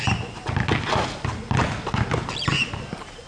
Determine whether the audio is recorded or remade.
recorded